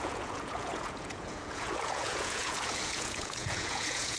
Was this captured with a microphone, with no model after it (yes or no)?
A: no